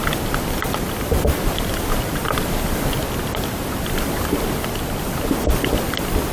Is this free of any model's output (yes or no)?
yes